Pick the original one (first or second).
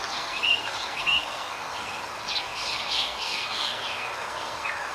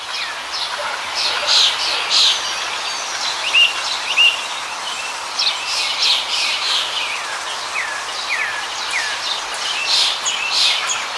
second